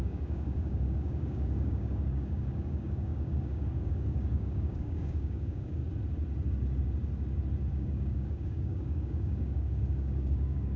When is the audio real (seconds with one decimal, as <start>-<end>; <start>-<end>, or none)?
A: 5.8-7.7